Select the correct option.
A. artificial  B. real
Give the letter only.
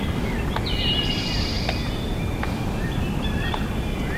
B